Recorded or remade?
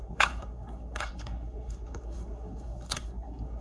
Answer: remade